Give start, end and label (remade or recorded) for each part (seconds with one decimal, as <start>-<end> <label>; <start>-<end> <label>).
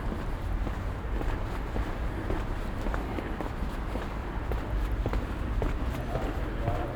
0.0-4.2 recorded; 4.2-6.3 remade; 6.3-7.0 recorded